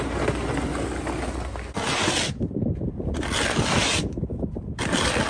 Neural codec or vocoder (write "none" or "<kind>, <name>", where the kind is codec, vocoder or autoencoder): none